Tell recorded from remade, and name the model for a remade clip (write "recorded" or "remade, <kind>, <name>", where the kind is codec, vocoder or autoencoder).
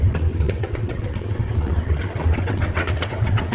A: remade, vocoder, WaveNeXt